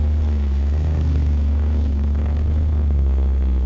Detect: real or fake fake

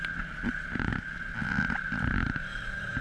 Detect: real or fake real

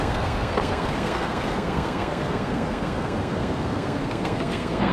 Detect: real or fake fake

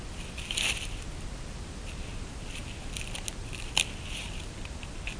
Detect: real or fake real